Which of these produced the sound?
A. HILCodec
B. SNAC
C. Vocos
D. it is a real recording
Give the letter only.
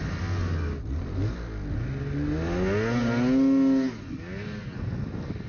D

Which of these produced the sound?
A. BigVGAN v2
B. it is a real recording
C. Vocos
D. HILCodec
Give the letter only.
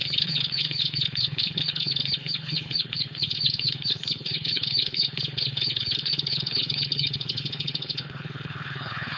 D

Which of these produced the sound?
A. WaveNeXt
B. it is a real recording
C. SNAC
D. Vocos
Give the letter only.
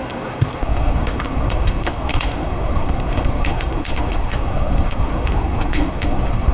C